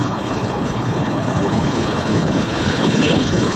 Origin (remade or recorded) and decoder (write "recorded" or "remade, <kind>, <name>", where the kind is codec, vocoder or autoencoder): remade, codec, HILCodec